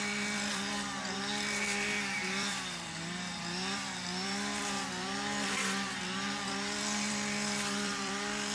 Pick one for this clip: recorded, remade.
remade